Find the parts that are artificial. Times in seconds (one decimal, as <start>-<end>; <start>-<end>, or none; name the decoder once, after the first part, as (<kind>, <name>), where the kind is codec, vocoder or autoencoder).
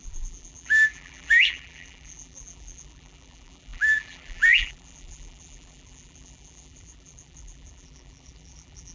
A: 0.0-8.9 (vocoder, BigVGAN v2)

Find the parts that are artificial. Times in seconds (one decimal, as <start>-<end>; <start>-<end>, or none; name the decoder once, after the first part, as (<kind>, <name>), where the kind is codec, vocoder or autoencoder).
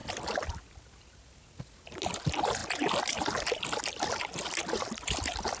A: none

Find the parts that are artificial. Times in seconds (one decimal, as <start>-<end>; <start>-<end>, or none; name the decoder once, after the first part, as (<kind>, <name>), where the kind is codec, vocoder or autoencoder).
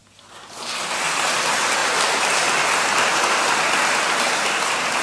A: 1.8-3.8 (vocoder, BigVGAN v2)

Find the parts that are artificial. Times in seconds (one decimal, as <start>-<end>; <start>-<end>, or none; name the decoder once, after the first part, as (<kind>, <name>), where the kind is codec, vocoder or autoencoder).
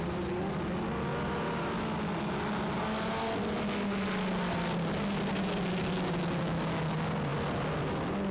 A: none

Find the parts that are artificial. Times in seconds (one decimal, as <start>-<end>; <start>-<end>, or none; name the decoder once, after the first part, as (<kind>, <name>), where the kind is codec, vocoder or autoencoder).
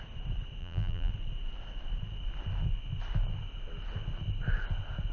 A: 0.6-1.1 (vocoder, BigVGAN v2)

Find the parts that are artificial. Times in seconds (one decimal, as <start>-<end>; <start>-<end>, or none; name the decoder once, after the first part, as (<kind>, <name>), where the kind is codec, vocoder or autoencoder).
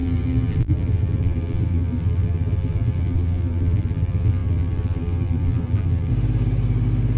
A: 0.0-6.1 (vocoder, BigVGAN v2)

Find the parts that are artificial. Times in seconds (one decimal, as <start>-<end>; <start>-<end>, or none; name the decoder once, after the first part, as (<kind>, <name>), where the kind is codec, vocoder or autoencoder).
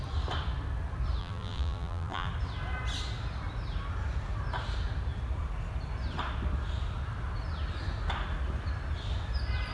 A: 1.2-2.3 (vocoder, BigVGAN v2)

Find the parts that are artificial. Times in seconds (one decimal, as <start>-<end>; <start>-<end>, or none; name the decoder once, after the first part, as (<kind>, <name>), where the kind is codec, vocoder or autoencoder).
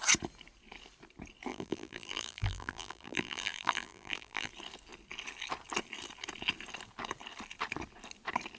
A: 1.5-4.5 (vocoder, BigVGAN v2)